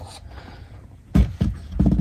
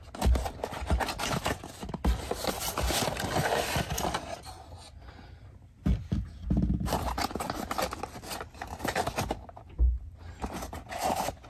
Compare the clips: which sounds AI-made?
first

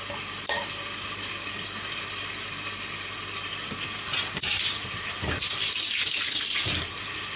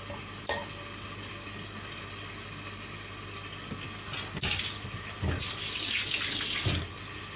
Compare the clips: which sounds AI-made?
first